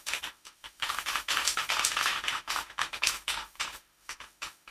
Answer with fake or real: fake